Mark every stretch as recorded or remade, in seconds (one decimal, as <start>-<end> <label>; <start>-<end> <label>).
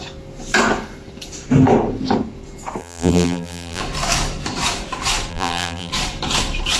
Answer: 0.0-2.8 recorded; 2.8-3.8 remade; 3.8-5.3 recorded; 5.3-5.9 remade; 5.9-6.8 recorded